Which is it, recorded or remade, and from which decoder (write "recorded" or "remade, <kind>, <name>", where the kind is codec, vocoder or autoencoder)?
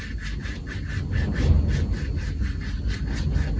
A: recorded